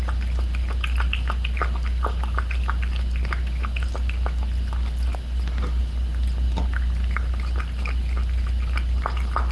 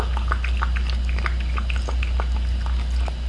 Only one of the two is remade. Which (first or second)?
first